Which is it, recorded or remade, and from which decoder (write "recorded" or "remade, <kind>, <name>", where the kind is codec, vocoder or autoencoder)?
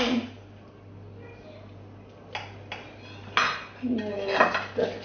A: recorded